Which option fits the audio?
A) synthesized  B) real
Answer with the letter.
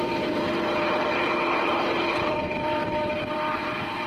A